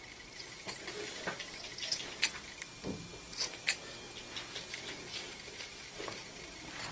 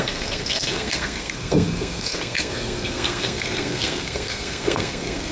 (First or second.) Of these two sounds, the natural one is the first